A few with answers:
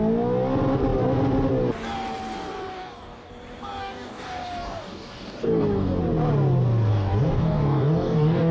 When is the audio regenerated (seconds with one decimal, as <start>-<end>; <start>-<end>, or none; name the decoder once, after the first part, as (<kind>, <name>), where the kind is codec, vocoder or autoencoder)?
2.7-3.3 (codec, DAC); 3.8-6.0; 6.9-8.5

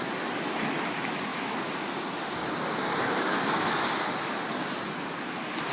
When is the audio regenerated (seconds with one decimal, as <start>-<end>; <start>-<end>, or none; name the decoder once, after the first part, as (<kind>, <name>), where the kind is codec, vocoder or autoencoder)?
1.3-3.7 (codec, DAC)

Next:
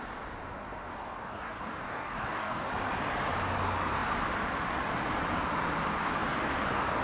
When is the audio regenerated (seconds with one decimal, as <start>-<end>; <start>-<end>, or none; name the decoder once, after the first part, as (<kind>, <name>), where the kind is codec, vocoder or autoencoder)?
0.9-2.7 (codec, DAC)